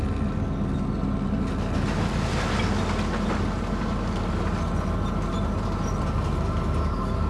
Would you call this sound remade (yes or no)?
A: no